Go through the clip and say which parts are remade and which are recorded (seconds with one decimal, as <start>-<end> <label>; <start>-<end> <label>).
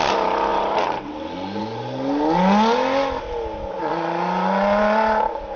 0.0-0.5 recorded; 0.5-1.1 remade; 1.1-5.6 recorded